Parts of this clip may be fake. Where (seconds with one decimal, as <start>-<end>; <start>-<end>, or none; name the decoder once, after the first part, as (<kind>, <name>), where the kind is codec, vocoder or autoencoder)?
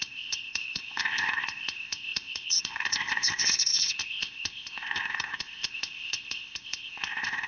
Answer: 0.0-7.5 (codec, ZipCodec)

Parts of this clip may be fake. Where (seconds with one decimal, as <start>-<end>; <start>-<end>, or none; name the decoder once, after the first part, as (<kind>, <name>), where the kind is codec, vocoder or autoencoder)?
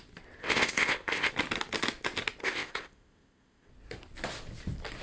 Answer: 0.4-1.3 (codec, ZipCodec); 2.4-3.7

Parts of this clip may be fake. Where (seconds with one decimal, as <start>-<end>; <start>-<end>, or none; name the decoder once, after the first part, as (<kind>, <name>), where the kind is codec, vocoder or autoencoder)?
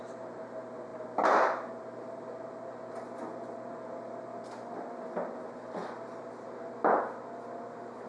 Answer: none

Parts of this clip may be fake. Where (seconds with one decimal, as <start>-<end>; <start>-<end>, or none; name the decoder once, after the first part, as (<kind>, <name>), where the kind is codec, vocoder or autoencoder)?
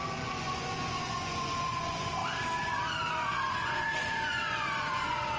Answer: 0.0-2.2 (vocoder, Vocos); 3.1-5.4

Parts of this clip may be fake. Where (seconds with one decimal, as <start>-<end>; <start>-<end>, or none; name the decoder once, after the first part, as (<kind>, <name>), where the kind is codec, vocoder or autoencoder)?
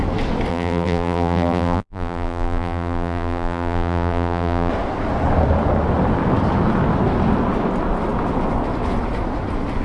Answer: 0.5-4.7 (vocoder, BigVGAN v2)